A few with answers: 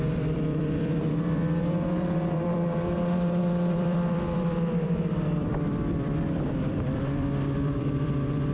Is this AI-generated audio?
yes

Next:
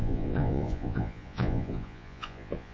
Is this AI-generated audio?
yes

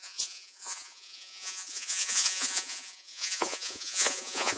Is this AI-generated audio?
yes